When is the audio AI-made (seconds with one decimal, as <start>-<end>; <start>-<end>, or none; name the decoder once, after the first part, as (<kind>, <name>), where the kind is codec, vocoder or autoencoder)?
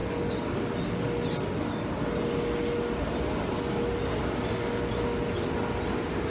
none